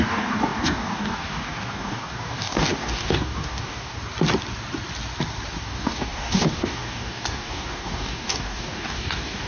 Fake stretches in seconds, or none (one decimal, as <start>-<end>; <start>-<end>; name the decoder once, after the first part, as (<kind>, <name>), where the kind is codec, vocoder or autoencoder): 0.0-4.0 (codec, DAC); 5.6-9.5